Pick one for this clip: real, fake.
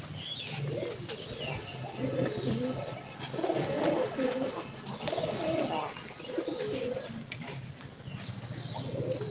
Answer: real